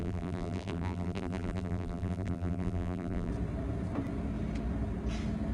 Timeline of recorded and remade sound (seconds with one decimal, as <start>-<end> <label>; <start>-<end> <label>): 0.0-3.3 remade; 3.3-5.5 recorded